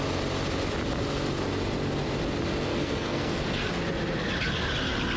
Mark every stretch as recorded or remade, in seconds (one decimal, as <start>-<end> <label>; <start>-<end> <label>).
0.0-2.7 recorded; 2.7-3.7 remade; 3.7-5.2 recorded